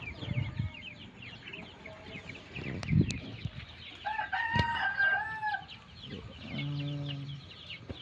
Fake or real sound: real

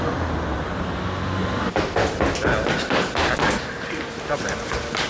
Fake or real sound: real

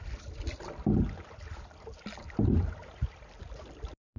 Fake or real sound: real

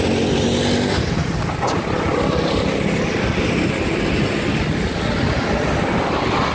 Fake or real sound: real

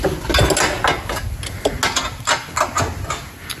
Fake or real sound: real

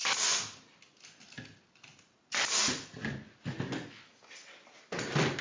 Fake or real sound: real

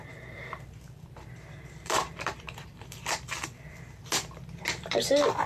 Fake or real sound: fake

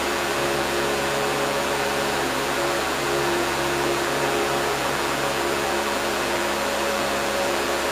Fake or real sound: fake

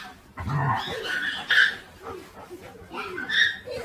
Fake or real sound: real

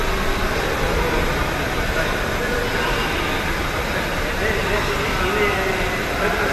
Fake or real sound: real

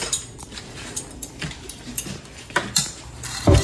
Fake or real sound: fake